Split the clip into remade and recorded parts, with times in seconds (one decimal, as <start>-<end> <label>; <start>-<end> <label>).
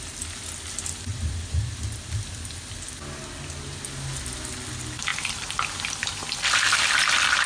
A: 0.0-1.1 recorded; 1.1-1.8 remade; 1.8-5.1 recorded; 5.1-6.8 remade; 6.8-7.5 recorded